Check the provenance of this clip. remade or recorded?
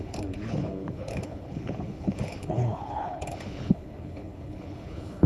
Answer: remade